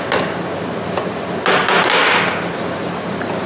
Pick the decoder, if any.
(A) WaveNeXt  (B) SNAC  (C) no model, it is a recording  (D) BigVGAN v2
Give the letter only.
C